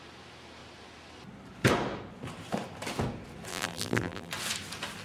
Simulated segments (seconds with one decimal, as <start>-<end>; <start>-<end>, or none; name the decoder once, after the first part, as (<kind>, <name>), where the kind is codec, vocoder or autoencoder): 3.5-4.3 (vocoder, BigVGAN v2)